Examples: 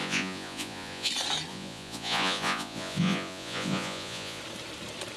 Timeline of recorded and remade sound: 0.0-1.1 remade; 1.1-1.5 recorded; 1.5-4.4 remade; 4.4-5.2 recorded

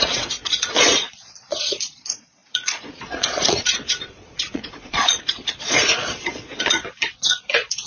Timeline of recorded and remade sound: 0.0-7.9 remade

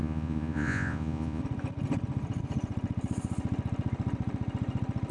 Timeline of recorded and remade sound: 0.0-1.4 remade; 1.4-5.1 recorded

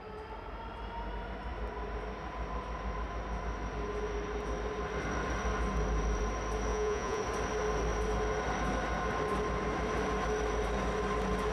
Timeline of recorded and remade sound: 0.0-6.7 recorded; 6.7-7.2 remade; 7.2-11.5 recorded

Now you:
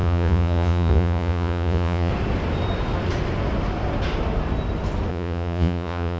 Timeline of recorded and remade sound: 0.0-2.1 remade; 2.1-5.1 recorded; 5.1-6.2 remade

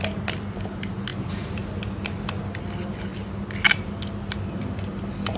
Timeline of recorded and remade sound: 0.0-5.4 recorded